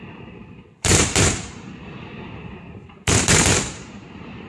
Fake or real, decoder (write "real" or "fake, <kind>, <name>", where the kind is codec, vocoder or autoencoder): fake, vocoder, BigVGAN v2